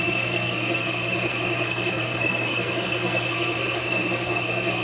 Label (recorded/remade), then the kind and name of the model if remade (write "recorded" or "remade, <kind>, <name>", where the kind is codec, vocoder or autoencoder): remade, codec, SNAC